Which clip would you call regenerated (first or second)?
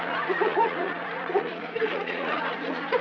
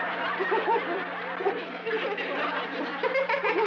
first